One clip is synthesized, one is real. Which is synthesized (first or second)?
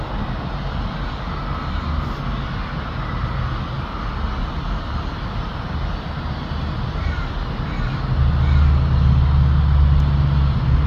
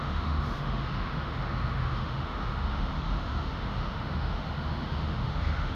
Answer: second